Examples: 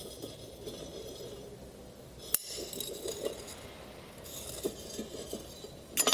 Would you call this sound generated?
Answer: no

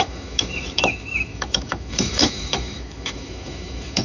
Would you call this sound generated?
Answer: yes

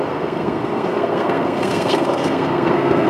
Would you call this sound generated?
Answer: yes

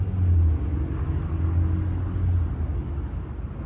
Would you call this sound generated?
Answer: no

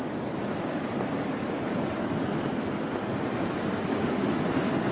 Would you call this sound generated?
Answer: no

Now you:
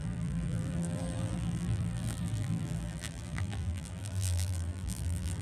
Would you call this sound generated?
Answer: yes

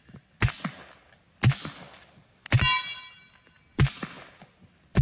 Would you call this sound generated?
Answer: no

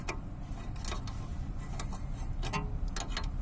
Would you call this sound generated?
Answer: no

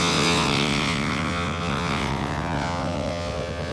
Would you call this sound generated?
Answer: yes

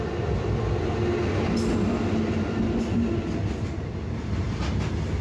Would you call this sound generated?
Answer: no